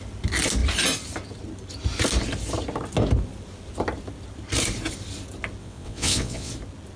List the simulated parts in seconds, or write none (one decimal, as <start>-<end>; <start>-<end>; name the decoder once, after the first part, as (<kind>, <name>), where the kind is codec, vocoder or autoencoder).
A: 5.6-6.5 (vocoder, WaveNeXt)